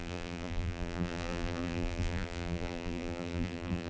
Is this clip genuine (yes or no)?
no